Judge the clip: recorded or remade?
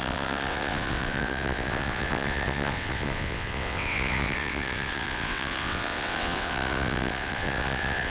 remade